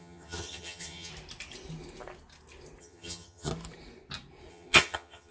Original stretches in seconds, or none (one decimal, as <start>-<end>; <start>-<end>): 1.1-2.8; 3.5-4.5